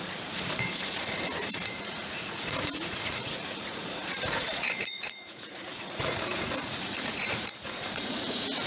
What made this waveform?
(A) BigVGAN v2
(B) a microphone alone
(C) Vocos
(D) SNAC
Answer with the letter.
C